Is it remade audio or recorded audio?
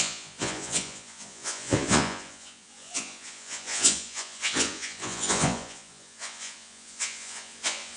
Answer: remade